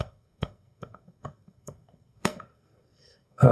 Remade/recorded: remade